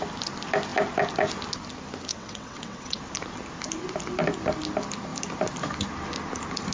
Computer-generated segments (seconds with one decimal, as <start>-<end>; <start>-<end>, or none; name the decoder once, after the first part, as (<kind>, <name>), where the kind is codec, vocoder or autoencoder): 2.1-3.0 (vocoder, WaveNeXt)

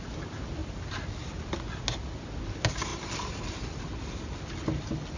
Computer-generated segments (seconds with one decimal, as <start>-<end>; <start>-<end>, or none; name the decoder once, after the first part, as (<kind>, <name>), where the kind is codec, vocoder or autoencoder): 0.6-1.6 (vocoder, BigVGAN v2); 2.9-3.8

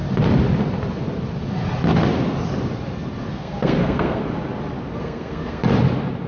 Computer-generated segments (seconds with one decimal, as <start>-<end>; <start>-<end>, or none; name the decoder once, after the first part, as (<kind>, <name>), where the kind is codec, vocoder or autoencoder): 3.3-4.2 (codec, SNAC); 5.0-5.6

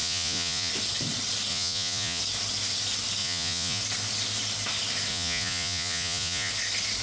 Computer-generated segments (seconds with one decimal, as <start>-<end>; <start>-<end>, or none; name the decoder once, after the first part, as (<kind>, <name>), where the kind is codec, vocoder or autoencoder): 0.0-0.7 (vocoder, Vocos); 1.5-2.2; 3.2-3.8; 5.1-6.5

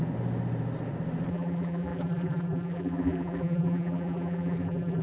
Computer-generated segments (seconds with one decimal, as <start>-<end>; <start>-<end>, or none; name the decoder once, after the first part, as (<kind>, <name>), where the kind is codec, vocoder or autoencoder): 1.3-5.0 (vocoder, BigVGAN v2)